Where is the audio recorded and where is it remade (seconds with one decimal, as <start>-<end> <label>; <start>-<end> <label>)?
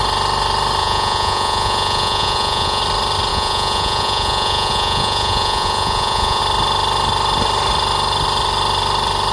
0.0-0.8 recorded; 0.8-2.8 remade; 2.8-3.3 recorded; 3.3-6.4 remade; 6.4-9.3 recorded